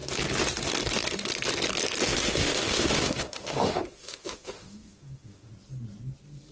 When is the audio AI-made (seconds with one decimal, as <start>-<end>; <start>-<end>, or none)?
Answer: 2.1-5.5